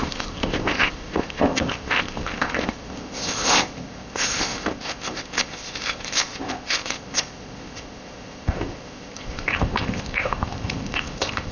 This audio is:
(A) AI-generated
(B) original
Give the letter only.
A